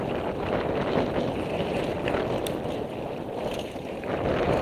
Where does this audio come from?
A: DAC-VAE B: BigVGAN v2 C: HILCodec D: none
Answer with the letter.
D